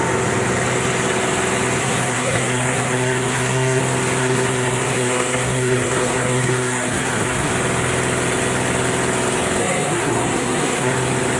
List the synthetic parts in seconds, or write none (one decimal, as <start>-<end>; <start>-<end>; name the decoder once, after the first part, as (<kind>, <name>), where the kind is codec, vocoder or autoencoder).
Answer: 1.8-3.8 (codec, SNAC); 4.2-7.5; 9.6-10.9